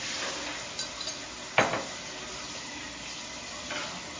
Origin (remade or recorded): recorded